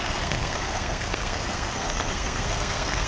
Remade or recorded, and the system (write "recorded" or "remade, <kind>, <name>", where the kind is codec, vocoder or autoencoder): remade, codec, SNAC